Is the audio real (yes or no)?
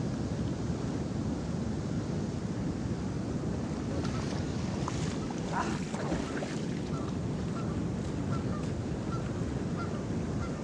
yes